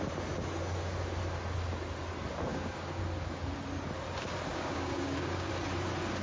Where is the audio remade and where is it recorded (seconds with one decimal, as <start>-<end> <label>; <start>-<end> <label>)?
0.0-2.5 recorded; 2.5-3.0 remade; 3.0-4.5 recorded; 4.5-5.5 remade; 5.5-6.2 recorded